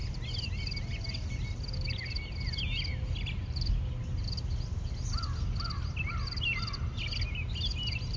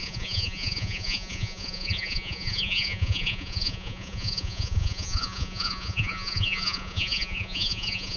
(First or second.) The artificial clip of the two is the second